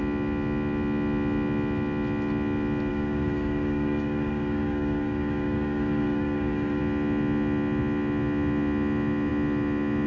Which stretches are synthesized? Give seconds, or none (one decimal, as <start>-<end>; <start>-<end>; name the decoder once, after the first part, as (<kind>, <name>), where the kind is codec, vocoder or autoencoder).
2.9-6.8 (codec, DAC)